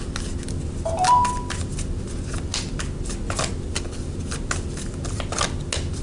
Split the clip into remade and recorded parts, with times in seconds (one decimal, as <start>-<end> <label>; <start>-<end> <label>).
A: 0.0-6.0 recorded